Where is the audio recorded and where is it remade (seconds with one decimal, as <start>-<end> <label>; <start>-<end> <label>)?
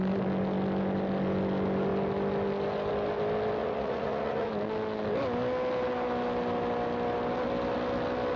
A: 0.0-3.6 recorded; 3.6-4.5 remade; 4.5-8.4 recorded